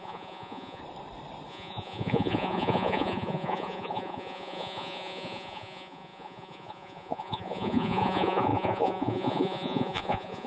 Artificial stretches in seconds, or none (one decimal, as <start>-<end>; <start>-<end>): 0.0-0.8; 1.5-10.5